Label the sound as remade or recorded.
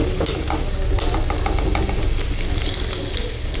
recorded